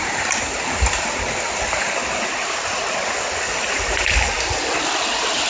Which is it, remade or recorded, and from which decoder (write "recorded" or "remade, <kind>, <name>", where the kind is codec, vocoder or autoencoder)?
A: recorded